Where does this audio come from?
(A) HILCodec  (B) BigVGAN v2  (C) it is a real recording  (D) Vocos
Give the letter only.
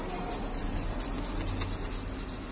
C